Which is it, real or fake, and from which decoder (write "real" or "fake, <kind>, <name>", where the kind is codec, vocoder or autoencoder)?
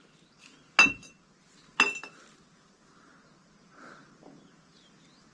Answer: real